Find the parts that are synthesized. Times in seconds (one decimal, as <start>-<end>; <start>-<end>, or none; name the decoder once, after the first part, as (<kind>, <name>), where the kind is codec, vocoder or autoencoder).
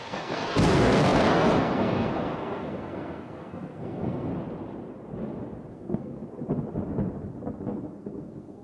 0.0-4.3 (codec, SNAC); 5.7-6.2; 7.9-8.6